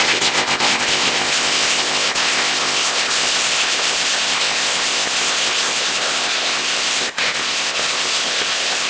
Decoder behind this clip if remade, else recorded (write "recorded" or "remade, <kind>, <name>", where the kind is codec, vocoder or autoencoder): remade, codec, ZipCodec